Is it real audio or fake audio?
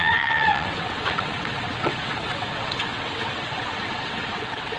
fake